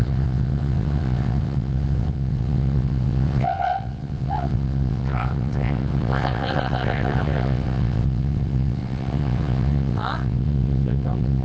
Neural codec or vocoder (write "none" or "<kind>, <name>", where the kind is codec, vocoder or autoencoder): vocoder, WaveNeXt